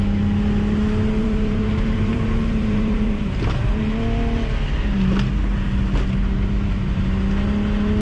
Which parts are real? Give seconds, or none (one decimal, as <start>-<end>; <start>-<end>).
0.0-1.2; 3.8-8.0